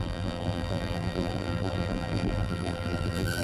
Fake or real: fake